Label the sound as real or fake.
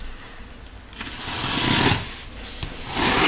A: real